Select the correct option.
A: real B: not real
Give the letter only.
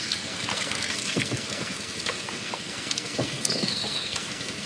B